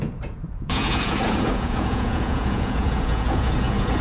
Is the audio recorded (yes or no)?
no